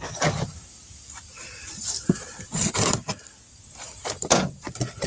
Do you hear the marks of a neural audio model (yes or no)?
yes